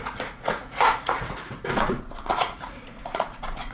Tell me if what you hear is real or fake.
fake